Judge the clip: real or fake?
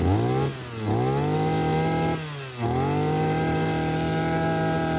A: real